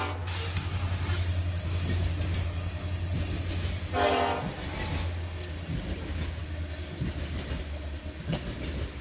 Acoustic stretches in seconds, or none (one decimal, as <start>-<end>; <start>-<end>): 0.0-9.0